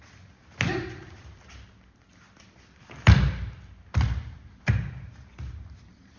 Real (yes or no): yes